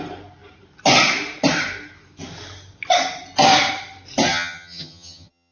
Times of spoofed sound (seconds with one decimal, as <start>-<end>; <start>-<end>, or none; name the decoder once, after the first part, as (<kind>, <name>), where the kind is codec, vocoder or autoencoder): 4.3-5.5 (vocoder, HiFi-GAN)